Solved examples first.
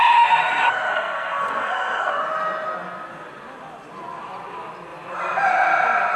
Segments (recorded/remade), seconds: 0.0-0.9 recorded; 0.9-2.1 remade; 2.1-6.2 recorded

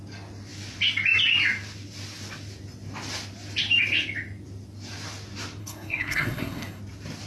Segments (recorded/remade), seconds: 0.0-5.6 recorded; 5.6-6.8 remade; 6.8-7.3 recorded

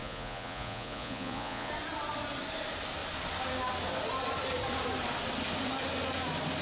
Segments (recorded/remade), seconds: 0.0-1.7 remade; 1.7-6.6 recorded